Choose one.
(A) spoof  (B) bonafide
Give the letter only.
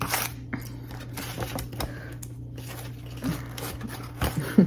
B